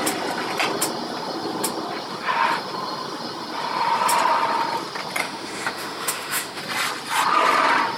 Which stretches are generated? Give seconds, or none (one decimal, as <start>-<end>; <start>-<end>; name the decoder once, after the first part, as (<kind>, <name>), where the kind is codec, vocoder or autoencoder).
5.2-6.6 (autoencoder, DAC-VAE)